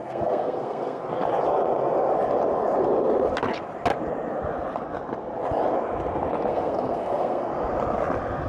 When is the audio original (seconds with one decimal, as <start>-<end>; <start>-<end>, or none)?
1.0-6.5; 7.5-8.5